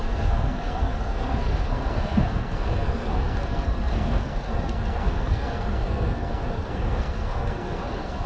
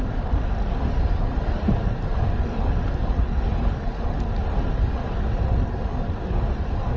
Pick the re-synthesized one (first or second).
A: first